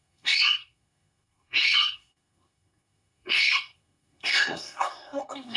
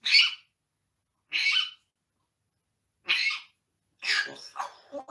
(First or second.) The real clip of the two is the second